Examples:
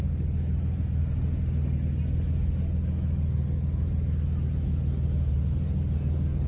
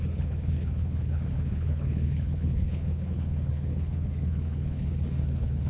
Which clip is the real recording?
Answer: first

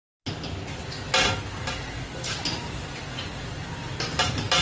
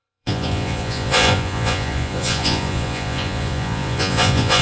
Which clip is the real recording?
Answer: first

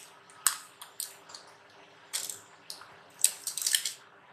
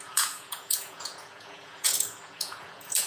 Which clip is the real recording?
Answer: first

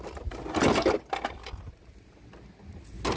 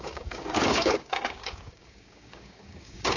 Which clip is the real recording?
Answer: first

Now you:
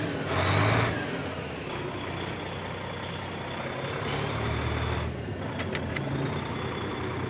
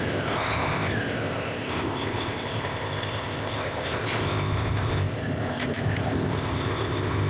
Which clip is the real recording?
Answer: first